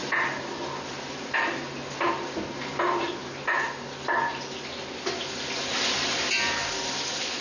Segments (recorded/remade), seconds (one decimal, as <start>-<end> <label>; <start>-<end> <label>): 0.0-7.4 recorded